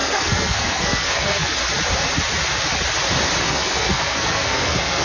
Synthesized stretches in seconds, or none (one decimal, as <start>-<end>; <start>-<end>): 0.0-1.6; 3.4-5.0